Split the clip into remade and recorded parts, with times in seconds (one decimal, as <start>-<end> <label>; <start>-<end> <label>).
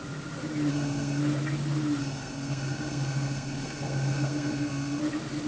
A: 0.0-0.7 recorded; 0.7-1.2 remade; 1.2-2.0 recorded; 2.0-5.0 remade; 5.0-5.5 recorded